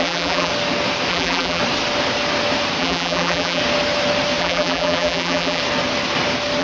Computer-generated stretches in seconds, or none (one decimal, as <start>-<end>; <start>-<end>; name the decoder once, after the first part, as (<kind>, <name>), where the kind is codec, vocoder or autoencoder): 0.0-0.5 (vocoder, BigVGAN v2); 1.1-1.6; 2.8-3.6; 4.4-5.6